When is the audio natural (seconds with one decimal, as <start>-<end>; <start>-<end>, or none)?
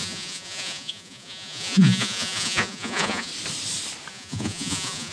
3.3-4.1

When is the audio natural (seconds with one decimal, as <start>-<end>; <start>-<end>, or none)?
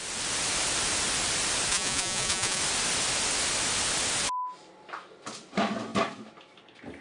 0.0-1.7; 2.6-7.0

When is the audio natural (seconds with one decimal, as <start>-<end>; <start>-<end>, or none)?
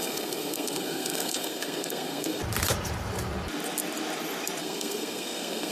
2.4-4.6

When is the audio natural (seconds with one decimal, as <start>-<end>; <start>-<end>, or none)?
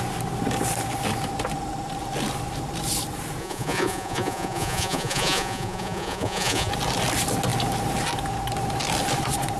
0.0-3.4; 6.7-9.6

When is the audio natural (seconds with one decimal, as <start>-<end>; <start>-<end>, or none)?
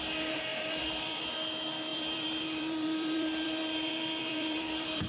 0.0-0.5; 1.2-1.9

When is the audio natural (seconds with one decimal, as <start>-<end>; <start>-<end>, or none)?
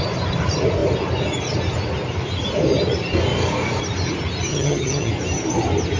0.0-4.5; 5.1-6.0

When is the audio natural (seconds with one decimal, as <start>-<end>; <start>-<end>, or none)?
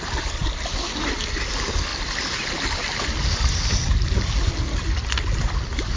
0.0-6.0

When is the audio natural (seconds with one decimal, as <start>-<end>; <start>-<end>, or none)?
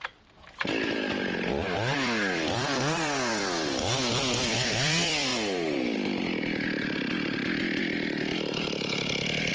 none